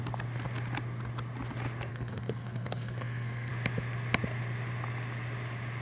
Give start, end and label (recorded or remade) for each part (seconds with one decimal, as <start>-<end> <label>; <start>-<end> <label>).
0.0-1.9 recorded; 1.9-3.5 remade; 3.5-5.8 recorded